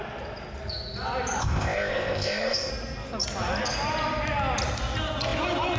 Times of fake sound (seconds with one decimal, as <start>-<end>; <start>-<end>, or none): 1.4-2.7